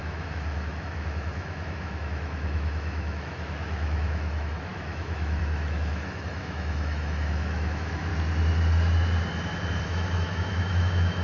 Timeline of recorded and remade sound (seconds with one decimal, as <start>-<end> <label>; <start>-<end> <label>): 0.0-8.1 remade; 8.1-9.8 recorded; 9.8-11.2 remade